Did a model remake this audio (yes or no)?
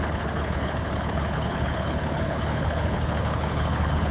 yes